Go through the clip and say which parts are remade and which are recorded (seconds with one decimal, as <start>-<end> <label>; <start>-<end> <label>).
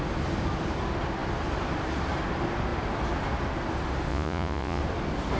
0.0-4.1 recorded; 4.1-4.8 remade; 4.8-5.4 recorded